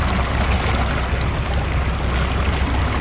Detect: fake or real real